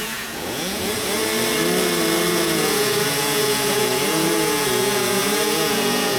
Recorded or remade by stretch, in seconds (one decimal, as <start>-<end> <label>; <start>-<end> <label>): 0.0-1.2 remade; 1.2-2.3 recorded; 2.3-6.2 remade